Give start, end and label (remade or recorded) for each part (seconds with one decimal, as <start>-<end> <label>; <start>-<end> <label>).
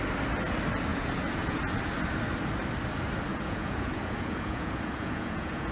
0.0-0.9 recorded; 0.9-1.6 remade; 1.6-3.3 recorded; 3.3-5.7 remade